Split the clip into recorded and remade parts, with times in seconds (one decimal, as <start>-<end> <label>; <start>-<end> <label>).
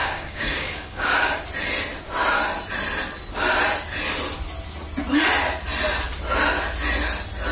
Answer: 0.0-1.3 remade; 1.3-7.5 recorded